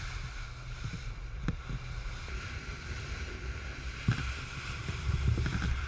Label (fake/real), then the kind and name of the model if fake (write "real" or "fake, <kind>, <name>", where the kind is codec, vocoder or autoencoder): fake, vocoder, BigVGAN v2